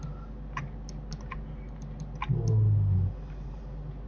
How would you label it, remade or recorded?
recorded